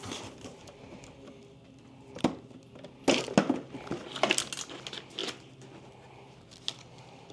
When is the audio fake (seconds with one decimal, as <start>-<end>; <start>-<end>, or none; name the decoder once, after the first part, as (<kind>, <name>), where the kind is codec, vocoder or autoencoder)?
none